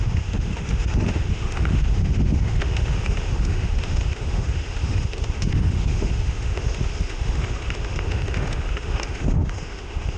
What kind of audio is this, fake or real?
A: fake